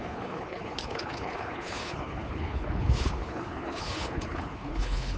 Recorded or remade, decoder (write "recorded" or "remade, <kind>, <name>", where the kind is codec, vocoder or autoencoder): remade, codec, HILCodec